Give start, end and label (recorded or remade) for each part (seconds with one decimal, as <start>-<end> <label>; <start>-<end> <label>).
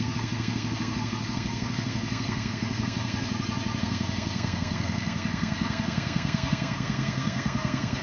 0.0-3.3 remade; 3.3-3.8 recorded; 3.8-8.0 remade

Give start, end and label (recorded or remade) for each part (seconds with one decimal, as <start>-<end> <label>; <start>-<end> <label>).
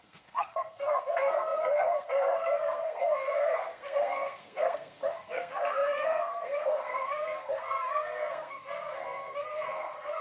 0.0-10.2 remade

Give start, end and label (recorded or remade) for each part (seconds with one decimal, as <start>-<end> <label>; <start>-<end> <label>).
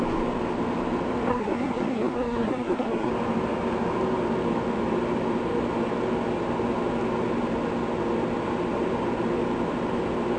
0.0-1.3 recorded; 1.3-3.1 remade; 3.1-10.4 recorded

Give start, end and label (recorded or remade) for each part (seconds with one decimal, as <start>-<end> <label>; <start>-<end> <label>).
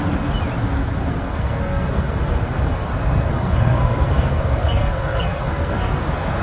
0.0-1.0 recorded; 1.0-2.9 remade; 2.9-3.3 recorded; 3.3-6.0 remade; 6.0-6.4 recorded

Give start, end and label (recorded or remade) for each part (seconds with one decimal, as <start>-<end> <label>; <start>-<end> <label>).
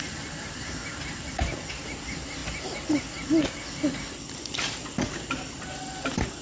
0.0-6.4 recorded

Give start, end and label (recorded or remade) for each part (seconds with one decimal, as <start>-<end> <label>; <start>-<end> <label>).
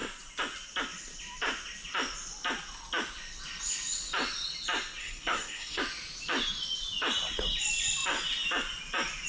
0.0-5.0 recorded; 5.0-5.8 remade; 5.8-9.3 recorded